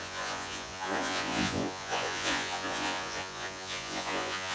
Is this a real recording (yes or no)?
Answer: no